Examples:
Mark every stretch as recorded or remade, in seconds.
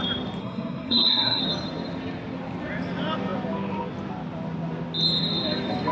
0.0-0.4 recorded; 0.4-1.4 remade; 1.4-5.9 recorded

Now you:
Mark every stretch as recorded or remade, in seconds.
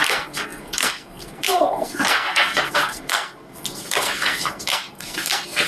0.0-5.7 remade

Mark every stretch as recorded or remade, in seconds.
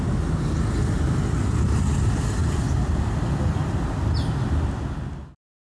0.0-5.7 recorded